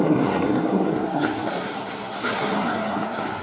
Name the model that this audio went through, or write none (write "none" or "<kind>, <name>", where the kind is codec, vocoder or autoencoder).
codec, SNAC